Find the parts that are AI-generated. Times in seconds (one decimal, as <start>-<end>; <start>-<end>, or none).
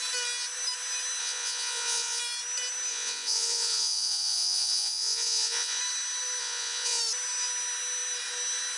1.2-2.2; 2.9-5.8; 6.4-7.0